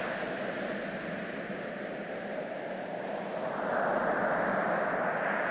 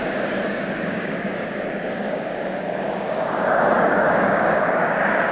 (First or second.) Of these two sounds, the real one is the first